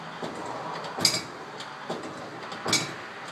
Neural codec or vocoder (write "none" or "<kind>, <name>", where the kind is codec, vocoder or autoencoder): none